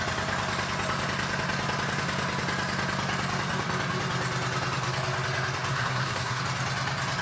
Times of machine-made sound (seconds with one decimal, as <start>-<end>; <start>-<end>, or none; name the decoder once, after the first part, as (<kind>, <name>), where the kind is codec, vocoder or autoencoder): 5.7-6.4 (codec, SNAC)